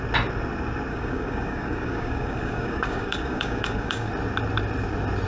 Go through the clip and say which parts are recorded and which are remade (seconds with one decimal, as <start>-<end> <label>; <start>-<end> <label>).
0.0-0.9 recorded; 0.9-4.1 remade; 4.1-5.3 recorded